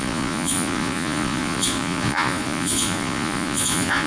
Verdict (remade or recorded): remade